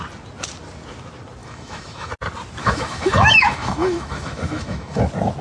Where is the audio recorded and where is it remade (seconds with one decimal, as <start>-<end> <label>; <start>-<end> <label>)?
0.0-1.4 recorded; 1.4-2.1 remade; 2.1-2.6 recorded; 2.6-5.0 remade; 5.0-5.4 recorded